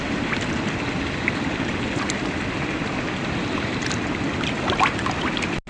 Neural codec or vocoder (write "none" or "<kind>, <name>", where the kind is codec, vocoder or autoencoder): none